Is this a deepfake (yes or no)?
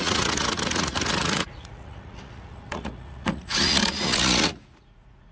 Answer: yes